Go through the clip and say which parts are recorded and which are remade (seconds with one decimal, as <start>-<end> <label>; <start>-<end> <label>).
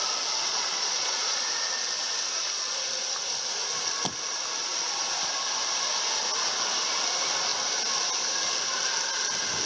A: 0.0-0.5 recorded; 0.5-1.4 remade; 1.4-9.7 recorded